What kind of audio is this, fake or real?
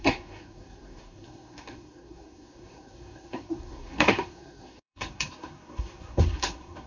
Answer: fake